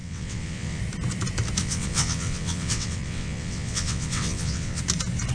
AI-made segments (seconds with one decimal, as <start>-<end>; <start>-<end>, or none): 0.0-0.8; 1.6-4.8